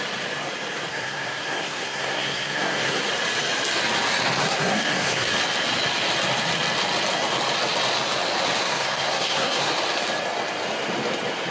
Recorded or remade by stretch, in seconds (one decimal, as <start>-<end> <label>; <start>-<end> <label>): 0.0-0.9 recorded; 0.9-3.1 remade; 3.1-4.4 recorded; 4.4-5.3 remade; 5.3-8.6 recorded; 8.6-9.7 remade; 9.7-11.5 recorded